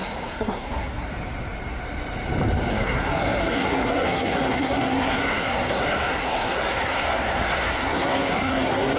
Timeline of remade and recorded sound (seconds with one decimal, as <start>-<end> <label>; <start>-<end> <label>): 0.0-1.1 remade; 1.1-2.7 recorded; 2.7-9.0 remade